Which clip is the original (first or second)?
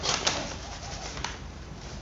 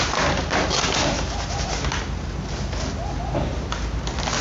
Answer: second